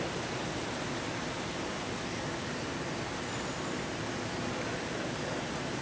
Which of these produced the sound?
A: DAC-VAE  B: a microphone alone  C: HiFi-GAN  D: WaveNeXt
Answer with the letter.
B